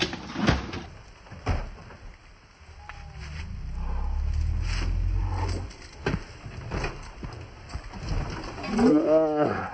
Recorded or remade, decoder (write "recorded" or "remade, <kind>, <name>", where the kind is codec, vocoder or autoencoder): recorded